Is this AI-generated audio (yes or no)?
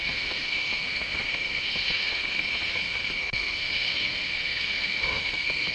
yes